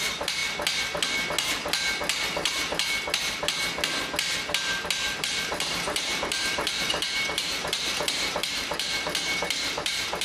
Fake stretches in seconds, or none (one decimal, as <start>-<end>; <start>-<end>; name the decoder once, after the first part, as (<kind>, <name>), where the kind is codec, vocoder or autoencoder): 0.0-0.4 (vocoder, BigVGAN v2); 5.2-10.2